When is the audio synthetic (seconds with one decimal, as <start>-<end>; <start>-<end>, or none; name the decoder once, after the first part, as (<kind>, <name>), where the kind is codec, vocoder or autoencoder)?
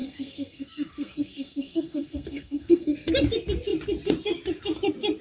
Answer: 0.0-3.1 (codec, SNAC)